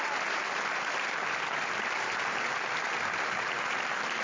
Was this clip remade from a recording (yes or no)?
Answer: no